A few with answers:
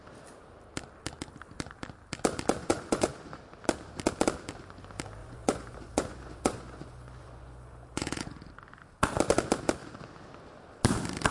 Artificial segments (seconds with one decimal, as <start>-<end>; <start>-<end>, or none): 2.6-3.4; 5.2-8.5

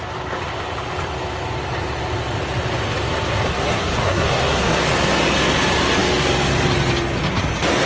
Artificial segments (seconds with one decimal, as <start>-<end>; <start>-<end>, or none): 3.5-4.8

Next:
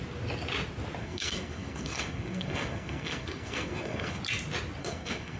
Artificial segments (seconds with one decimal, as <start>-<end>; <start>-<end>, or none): 1.0-4.2; 4.8-5.4

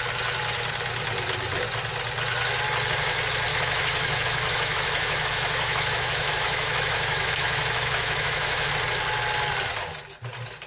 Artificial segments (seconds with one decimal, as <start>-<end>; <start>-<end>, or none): 3.5-8.7